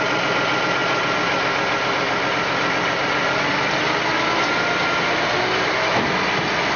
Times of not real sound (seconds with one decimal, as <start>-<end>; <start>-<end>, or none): none